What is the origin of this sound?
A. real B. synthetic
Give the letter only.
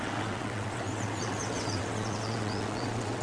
B